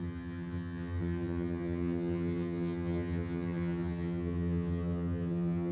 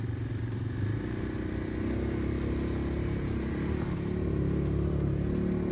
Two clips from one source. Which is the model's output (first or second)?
first